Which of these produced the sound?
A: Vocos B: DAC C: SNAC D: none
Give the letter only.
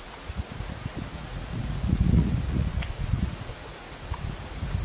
A